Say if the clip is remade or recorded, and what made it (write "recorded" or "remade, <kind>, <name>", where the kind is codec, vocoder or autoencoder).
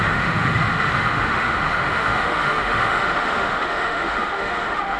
remade, autoencoder, DAC-VAE